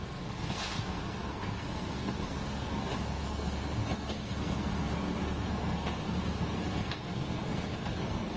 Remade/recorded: remade